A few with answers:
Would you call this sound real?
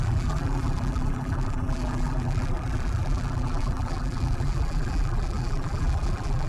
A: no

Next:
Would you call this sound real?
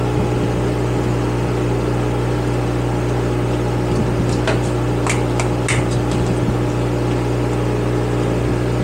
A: yes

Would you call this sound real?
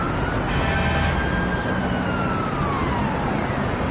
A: yes